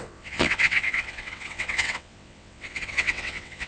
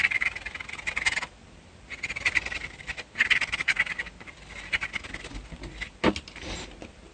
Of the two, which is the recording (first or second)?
second